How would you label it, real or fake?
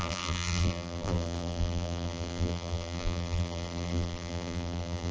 fake